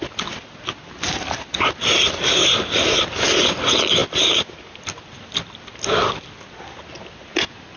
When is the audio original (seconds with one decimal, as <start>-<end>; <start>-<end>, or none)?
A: 0.0-4.0; 5.6-7.8